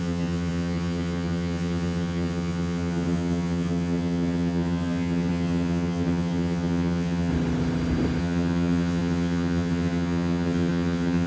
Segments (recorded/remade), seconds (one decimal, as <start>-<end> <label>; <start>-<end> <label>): 0.0-7.3 remade; 7.3-8.2 recorded; 8.2-11.3 remade

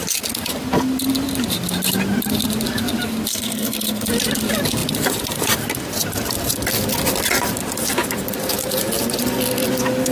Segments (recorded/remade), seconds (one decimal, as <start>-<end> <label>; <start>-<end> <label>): 0.0-3.3 recorded; 3.3-4.1 remade; 4.1-10.1 recorded